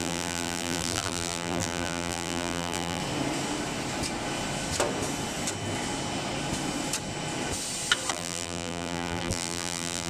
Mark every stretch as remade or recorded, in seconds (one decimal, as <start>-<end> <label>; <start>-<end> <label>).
0.0-3.0 remade; 3.0-8.1 recorded; 8.1-10.1 remade